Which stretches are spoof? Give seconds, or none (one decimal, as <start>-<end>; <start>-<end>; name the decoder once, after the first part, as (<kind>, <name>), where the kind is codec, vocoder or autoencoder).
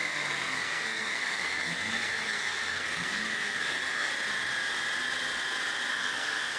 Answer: 0.0-4.1 (codec, SNAC); 5.9-6.6